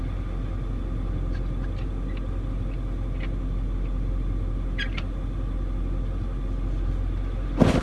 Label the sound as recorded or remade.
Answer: recorded